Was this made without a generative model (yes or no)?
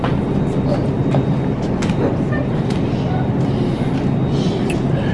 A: yes